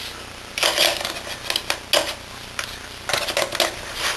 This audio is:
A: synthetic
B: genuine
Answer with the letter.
B